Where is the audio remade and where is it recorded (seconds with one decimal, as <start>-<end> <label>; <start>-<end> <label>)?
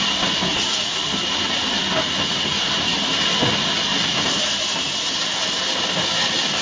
0.0-6.6 recorded